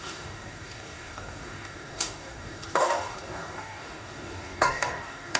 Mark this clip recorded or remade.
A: remade